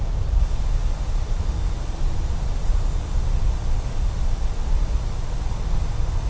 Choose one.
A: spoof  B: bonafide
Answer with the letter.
B